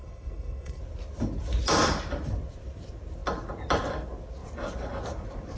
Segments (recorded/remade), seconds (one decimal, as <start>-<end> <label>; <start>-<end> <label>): 0.0-0.8 remade; 0.8-5.6 recorded